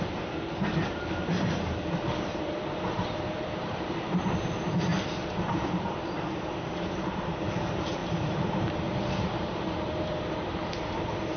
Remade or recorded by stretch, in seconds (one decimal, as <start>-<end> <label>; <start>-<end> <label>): 0.0-4.9 remade; 4.9-5.4 recorded; 5.4-11.4 remade